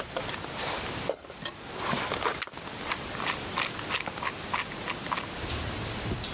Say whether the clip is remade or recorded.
remade